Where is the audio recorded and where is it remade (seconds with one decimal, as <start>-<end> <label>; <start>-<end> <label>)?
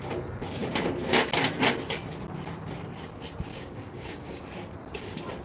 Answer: 0.0-3.5 recorded; 3.5-4.4 remade; 4.4-5.4 recorded